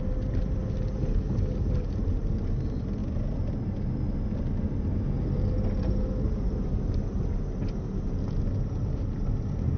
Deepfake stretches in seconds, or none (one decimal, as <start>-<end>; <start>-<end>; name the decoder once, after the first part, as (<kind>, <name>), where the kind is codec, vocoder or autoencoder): none